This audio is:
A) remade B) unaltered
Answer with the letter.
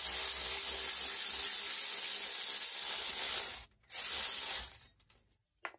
B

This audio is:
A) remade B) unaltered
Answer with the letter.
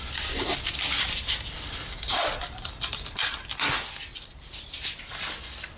B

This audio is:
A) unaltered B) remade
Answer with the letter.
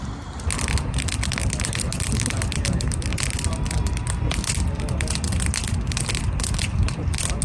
A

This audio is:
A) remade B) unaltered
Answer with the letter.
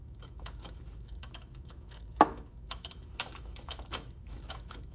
A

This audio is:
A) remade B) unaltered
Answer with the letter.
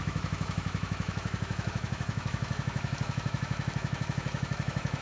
A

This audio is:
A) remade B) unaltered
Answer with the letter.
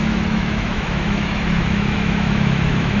A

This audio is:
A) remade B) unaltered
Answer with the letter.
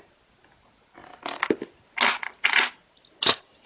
B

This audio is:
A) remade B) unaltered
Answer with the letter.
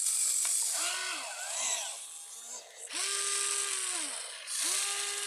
B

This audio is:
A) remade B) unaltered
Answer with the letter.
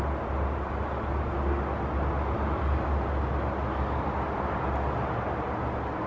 B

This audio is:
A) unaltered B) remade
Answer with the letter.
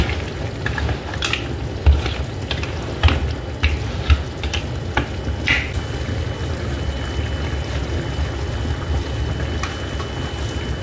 A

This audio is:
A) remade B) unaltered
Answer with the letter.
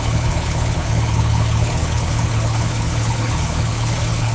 A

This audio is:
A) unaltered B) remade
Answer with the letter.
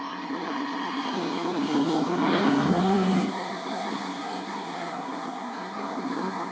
B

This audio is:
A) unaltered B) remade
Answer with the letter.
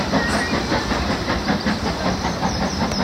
B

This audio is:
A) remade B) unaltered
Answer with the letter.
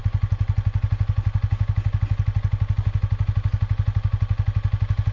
B